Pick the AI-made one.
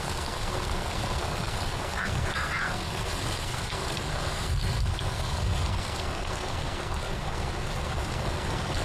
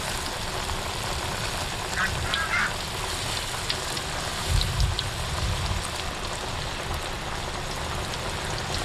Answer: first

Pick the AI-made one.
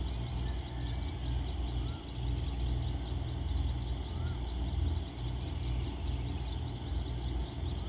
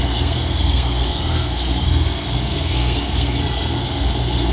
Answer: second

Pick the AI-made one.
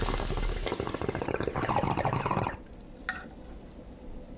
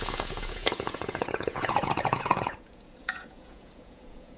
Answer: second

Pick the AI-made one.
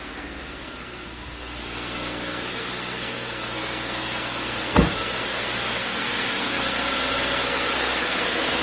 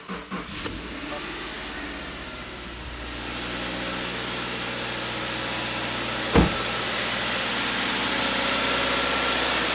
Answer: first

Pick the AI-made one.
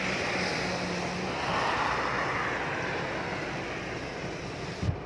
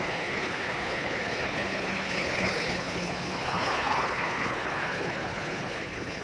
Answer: second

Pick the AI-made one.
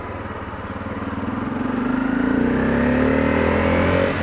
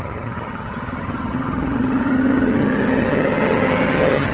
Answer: second